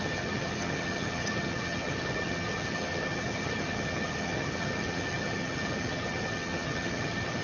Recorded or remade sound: remade